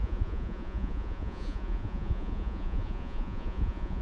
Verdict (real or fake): fake